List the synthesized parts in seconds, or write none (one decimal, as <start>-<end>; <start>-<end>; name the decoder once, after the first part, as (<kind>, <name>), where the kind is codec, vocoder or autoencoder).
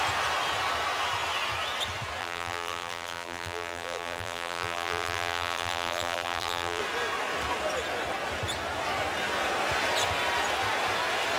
2.2-6.8 (vocoder, BigVGAN v2)